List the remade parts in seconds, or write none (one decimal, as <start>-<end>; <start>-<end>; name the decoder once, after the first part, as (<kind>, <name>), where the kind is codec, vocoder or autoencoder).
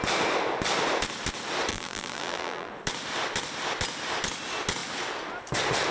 1.7-2.7 (vocoder, BigVGAN v2)